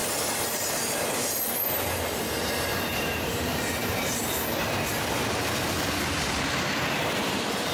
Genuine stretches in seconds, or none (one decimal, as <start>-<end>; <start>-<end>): 0.0-2.9; 4.2-7.7